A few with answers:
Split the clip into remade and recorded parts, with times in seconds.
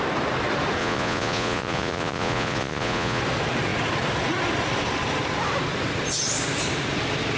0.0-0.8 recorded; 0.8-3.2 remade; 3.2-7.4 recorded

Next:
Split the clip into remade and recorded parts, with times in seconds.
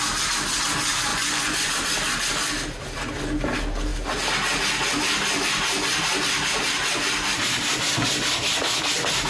0.0-1.1 recorded; 1.1-1.7 remade; 1.7-9.3 recorded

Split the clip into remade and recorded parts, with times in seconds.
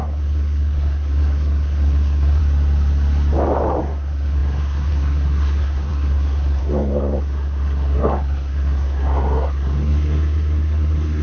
0.0-2.4 remade; 2.4-3.8 recorded; 3.8-11.2 remade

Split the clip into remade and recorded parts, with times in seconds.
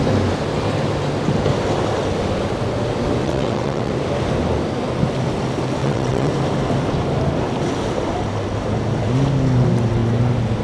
0.0-3.2 recorded; 3.2-3.9 remade; 3.9-5.8 recorded; 5.8-6.3 remade; 6.3-10.6 recorded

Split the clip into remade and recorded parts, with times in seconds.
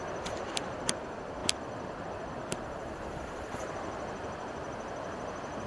0.0-5.7 recorded